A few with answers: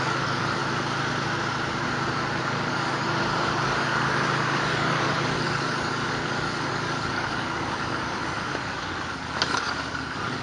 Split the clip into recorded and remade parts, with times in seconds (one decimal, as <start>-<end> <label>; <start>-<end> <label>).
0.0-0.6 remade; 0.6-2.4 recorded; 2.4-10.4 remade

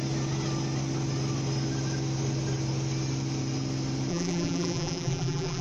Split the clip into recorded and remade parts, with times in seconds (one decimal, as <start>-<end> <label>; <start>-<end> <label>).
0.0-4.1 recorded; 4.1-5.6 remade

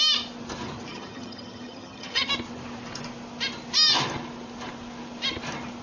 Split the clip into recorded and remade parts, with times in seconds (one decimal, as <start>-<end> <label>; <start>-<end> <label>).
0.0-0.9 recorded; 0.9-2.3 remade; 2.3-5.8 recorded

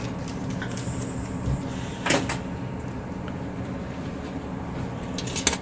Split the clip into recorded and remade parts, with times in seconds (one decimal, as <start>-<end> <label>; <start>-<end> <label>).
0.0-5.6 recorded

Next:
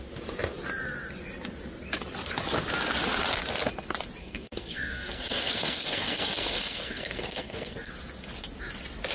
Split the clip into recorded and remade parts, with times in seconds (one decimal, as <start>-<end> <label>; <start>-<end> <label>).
0.0-4.2 recorded; 4.2-7.9 remade; 7.9-9.1 recorded

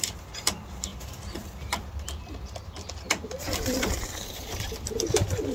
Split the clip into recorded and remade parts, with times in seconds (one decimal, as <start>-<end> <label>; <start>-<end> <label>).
0.0-5.5 remade

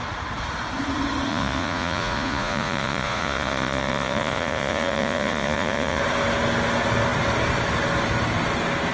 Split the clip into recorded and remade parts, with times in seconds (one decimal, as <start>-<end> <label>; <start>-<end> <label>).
0.0-1.3 recorded; 1.3-6.0 remade; 6.0-8.9 recorded

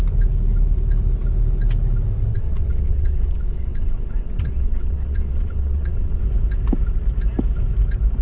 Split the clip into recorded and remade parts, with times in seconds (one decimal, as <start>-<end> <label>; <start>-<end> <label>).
0.0-2.3 recorded; 2.3-6.2 remade; 6.2-8.2 recorded